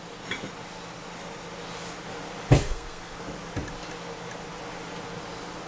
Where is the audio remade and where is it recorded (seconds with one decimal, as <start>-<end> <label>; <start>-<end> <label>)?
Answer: 0.0-2.6 recorded; 2.6-3.2 remade; 3.2-5.7 recorded